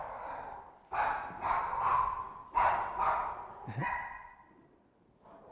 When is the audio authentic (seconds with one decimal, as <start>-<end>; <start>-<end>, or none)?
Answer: 0.0-5.5